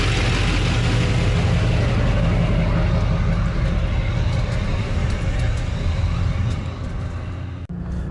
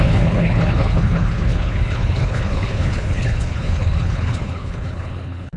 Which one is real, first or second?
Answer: first